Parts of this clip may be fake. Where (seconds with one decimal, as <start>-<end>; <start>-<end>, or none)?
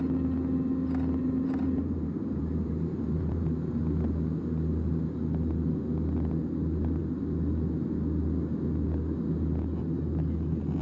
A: 1.2-3.8